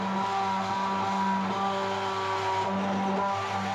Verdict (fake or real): real